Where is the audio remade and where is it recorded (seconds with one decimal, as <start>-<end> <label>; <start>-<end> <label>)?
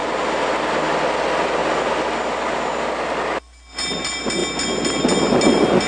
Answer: 0.0-5.9 recorded